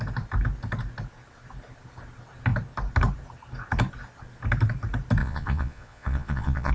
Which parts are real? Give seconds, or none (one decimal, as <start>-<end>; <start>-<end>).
0.0-5.2